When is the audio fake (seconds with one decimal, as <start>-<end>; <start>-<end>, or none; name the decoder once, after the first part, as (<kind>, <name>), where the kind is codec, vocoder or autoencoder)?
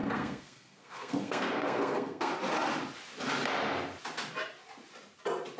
0.0-2.3 (codec, SNAC)